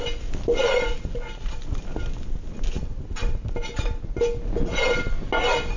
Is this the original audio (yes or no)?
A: yes